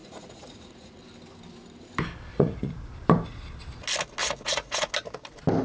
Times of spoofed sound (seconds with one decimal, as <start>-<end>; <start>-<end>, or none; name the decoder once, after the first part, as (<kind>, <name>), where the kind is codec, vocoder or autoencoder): 0.0-1.0 (vocoder, Vocos); 2.3-2.9; 4.2-4.9